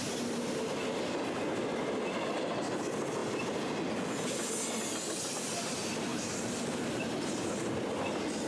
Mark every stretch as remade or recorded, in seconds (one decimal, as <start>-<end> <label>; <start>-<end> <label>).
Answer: 0.0-6.1 recorded; 6.1-7.3 remade; 7.3-8.5 recorded